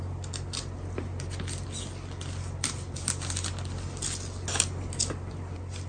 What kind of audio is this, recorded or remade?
recorded